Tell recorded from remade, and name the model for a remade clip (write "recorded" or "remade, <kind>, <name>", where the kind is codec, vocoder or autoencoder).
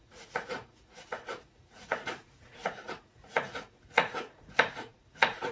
remade, vocoder, Vocos